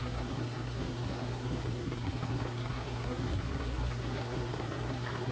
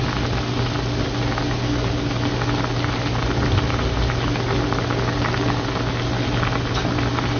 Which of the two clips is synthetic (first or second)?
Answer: first